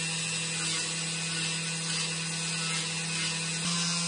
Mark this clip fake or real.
real